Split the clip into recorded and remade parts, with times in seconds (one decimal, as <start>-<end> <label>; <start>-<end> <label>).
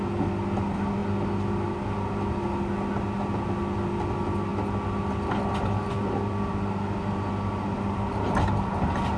0.0-9.2 recorded